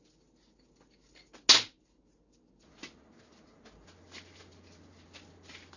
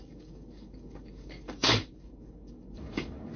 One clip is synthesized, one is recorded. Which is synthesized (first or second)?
second